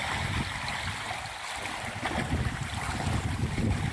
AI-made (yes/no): no